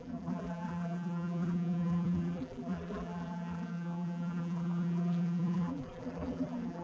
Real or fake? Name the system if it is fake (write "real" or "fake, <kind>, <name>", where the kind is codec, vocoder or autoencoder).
fake, vocoder, BigVGAN v2